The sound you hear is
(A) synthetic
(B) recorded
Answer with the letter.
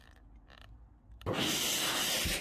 B